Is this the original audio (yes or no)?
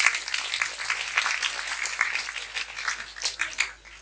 yes